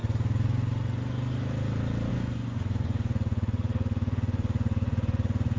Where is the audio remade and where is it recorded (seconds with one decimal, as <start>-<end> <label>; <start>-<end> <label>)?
0.0-2.1 recorded; 2.1-5.6 remade